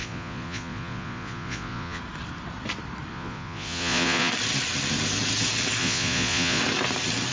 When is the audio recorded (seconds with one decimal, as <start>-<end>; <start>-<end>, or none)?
2.0-3.1; 4.3-5.8; 6.6-7.3